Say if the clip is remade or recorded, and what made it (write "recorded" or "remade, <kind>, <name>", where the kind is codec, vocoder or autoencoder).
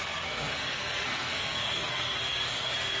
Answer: remade, codec, SNAC